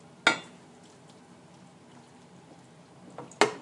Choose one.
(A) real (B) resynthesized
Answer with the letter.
A